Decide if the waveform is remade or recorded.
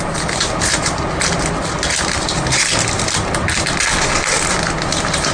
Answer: recorded